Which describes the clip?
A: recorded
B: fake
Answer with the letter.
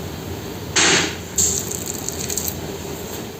A